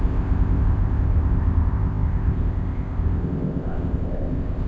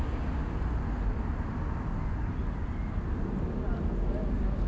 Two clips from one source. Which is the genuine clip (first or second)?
second